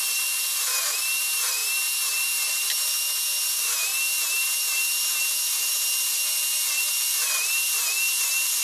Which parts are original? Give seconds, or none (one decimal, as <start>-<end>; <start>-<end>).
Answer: 1.6-2.1; 3.9-5.3